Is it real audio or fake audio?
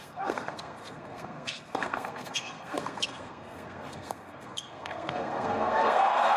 fake